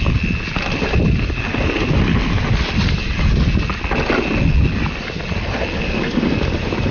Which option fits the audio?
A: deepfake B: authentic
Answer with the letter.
B